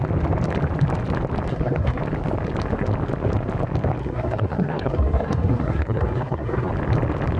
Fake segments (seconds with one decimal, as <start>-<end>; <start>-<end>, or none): 1.5-2.0; 4.0-6.7